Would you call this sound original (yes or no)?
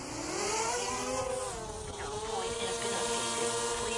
yes